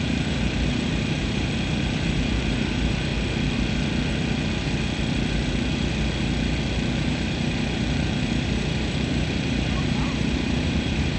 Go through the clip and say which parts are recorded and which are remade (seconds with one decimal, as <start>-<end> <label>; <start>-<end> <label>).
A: 0.0-3.1 remade; 3.1-6.9 recorded; 6.9-11.2 remade